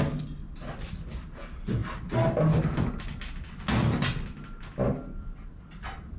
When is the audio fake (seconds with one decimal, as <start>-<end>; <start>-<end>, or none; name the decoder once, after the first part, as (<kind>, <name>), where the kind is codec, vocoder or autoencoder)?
none